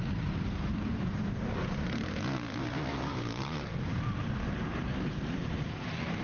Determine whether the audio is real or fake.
fake